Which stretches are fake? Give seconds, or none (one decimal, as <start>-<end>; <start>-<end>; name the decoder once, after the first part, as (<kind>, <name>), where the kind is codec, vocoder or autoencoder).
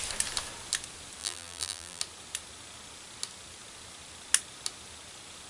1.2-2.0 (vocoder, BigVGAN v2)